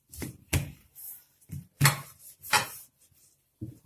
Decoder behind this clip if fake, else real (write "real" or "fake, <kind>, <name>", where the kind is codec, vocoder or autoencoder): real